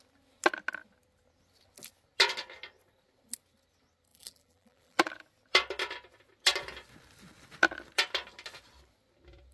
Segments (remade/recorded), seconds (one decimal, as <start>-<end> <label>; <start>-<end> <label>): 0.0-4.1 recorded; 4.1-5.1 remade; 5.1-9.5 recorded